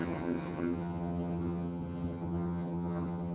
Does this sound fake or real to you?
fake